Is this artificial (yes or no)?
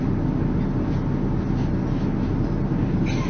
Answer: no